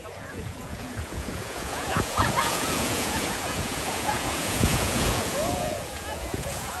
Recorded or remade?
remade